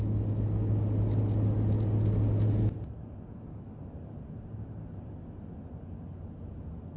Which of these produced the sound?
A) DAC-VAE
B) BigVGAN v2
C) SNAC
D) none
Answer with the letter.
D